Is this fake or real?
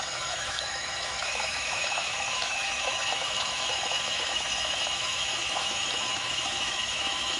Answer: fake